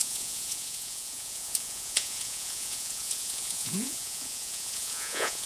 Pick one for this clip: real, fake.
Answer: fake